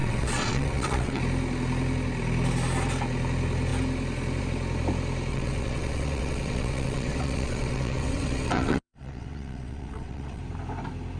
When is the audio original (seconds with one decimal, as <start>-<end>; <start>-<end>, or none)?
1.2-5.3; 10.4-11.2